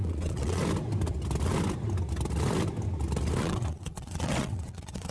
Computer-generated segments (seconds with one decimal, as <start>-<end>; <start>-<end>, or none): 0.0-0.6; 3.4-5.1